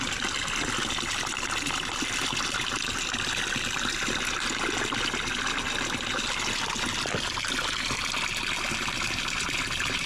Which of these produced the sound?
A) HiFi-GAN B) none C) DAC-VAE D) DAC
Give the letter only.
B